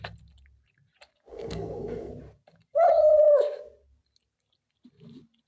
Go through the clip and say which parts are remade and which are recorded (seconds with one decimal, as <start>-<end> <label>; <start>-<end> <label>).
0.0-1.3 recorded; 1.3-2.1 remade; 2.1-5.5 recorded